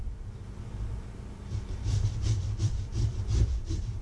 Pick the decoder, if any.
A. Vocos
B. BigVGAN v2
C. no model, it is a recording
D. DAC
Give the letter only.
B